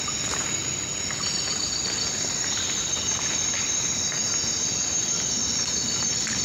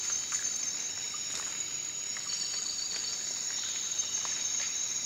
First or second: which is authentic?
first